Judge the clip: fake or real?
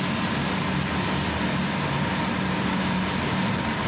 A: real